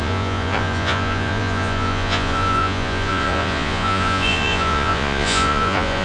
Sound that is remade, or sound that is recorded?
remade